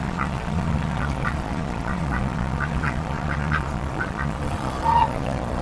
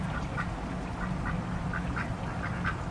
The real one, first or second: second